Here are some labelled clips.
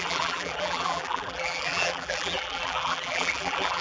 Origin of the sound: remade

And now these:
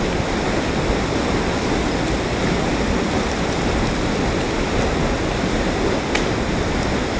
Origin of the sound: recorded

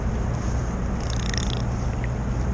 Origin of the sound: recorded